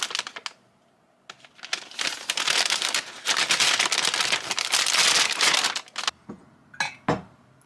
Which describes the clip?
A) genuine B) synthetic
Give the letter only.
A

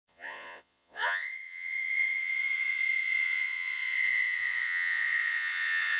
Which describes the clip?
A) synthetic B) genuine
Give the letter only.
A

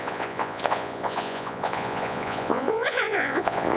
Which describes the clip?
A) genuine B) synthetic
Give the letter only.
B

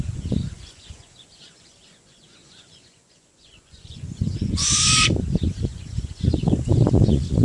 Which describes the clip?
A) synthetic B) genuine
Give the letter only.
A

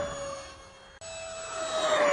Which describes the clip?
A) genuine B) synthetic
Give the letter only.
A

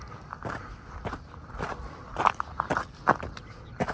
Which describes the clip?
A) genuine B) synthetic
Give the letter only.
A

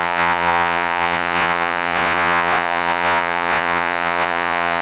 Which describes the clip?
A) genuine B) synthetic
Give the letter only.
B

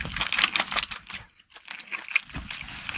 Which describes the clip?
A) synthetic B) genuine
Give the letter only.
B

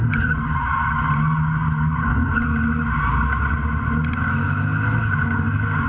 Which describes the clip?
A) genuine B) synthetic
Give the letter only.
A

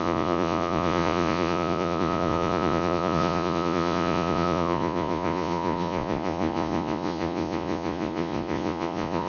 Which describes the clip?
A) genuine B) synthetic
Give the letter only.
B